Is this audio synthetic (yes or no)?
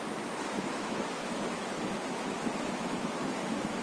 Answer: yes